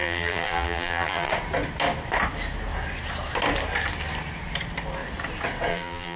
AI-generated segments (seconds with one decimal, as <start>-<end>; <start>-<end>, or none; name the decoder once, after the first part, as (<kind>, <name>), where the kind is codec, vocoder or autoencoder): 0.0-1.3 (vocoder, BigVGAN v2); 5.7-6.2